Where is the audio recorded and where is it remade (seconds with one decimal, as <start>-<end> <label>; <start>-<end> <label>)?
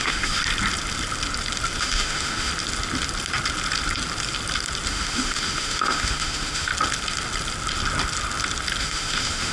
0.0-0.4 remade; 0.4-1.8 recorded; 1.8-2.5 remade; 2.5-4.9 recorded; 4.9-6.7 remade; 6.7-8.8 recorded; 8.8-9.5 remade